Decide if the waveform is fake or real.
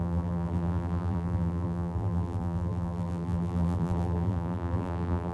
fake